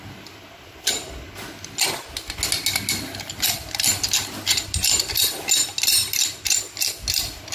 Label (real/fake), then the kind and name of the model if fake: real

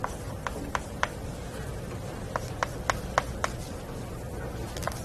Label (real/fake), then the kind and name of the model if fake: real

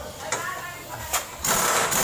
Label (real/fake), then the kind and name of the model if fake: real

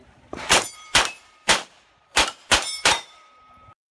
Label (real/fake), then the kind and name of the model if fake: fake, vocoder, BigVGAN v2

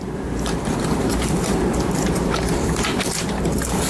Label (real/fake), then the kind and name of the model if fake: fake, vocoder, BigVGAN v2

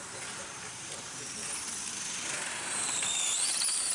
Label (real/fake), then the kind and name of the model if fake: fake, vocoder, BigVGAN v2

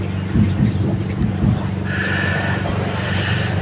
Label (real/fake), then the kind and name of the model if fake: real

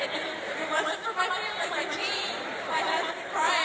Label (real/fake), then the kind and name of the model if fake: fake, vocoder, BigVGAN v2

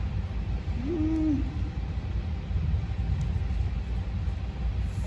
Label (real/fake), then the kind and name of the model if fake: real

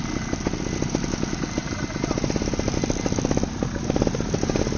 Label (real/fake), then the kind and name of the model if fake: real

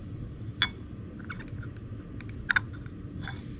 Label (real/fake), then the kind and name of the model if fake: real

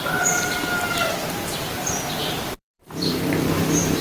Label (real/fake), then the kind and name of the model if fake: fake, vocoder, BigVGAN v2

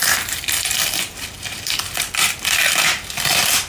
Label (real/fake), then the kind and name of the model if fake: fake, vocoder, BigVGAN v2